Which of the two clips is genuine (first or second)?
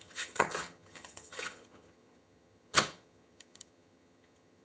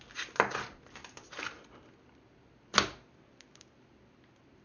second